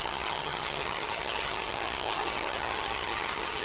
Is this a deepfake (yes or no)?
yes